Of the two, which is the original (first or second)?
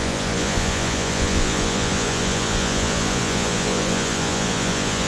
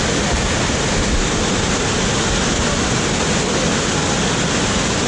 second